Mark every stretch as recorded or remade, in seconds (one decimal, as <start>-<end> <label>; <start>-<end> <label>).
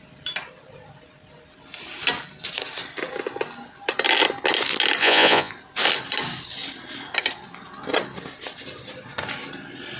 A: 0.0-5.0 recorded; 5.0-5.5 remade; 5.5-10.0 recorded